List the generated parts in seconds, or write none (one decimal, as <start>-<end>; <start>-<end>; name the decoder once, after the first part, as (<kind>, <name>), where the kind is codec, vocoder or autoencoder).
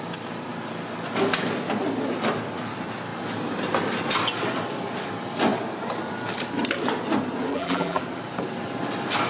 7.5-8.0 (vocoder, BigVGAN v2)